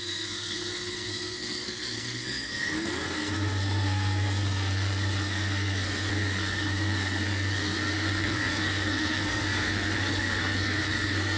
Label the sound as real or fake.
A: fake